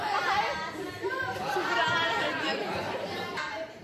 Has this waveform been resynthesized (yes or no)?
yes